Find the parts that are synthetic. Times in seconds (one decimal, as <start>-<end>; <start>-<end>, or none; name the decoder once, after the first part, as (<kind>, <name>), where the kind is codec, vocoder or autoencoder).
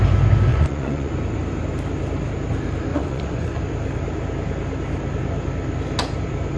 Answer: 0.5-1.1 (vocoder, Vocos); 2.9-3.6